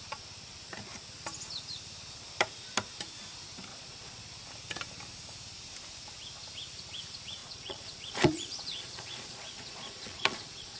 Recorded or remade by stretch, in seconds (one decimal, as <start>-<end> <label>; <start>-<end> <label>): 0.0-3.7 recorded; 3.7-4.2 remade; 4.2-7.4 recorded; 7.4-10.8 remade